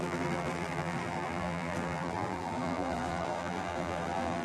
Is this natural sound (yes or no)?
no